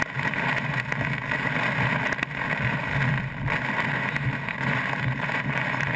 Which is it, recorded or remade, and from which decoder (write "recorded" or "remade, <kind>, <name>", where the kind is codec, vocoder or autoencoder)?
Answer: recorded